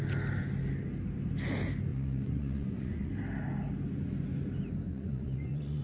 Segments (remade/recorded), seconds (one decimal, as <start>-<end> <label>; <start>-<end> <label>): 0.0-1.9 recorded; 1.9-3.1 remade; 3.1-4.9 recorded; 4.9-5.8 remade